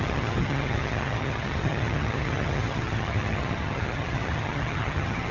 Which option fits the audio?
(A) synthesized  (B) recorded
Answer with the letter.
A